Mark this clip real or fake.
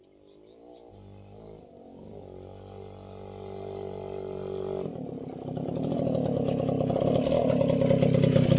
real